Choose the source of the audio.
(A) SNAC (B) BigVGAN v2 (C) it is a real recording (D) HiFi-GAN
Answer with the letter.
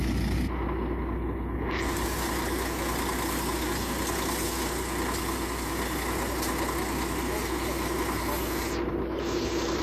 C